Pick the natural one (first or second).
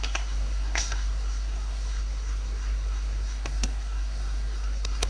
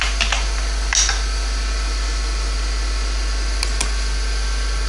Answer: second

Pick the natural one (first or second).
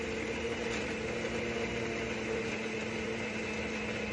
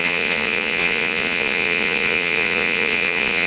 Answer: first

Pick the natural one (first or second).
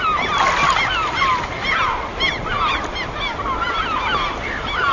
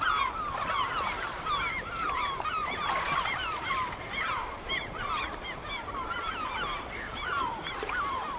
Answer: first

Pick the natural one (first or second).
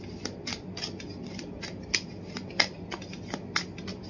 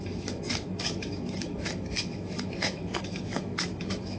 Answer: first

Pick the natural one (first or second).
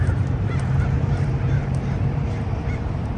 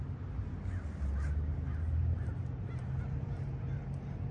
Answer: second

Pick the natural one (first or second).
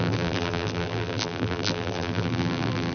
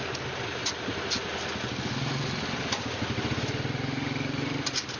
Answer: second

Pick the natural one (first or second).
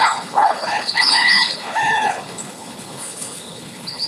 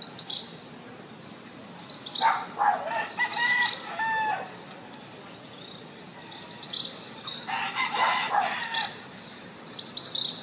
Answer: second